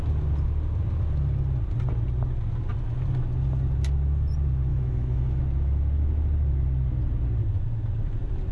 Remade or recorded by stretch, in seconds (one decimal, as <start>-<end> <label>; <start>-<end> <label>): 0.0-4.7 recorded; 4.7-5.4 remade; 5.4-8.5 recorded